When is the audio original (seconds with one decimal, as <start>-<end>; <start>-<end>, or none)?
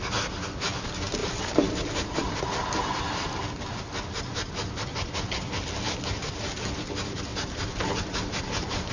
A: 0.0-1.2; 2.5-7.3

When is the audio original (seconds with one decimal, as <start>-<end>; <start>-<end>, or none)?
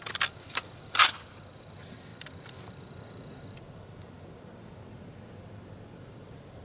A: 2.1-6.1